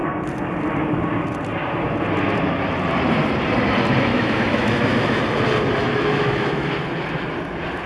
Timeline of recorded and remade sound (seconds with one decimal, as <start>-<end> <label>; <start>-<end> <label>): 0.0-4.1 recorded; 4.1-5.2 remade; 5.2-5.8 recorded; 5.8-6.7 remade; 6.7-7.9 recorded